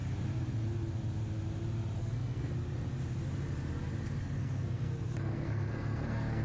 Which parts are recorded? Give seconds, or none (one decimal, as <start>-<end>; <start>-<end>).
0.0-2.0; 2.5-4.2